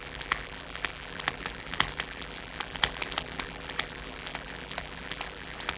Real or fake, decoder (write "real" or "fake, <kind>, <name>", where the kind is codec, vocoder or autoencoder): fake, vocoder, BigVGAN v2